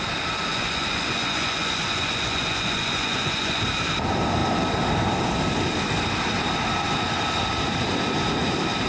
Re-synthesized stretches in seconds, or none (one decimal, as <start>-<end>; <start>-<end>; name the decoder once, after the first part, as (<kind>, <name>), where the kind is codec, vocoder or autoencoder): 0.5-3.6 (vocoder, Vocos)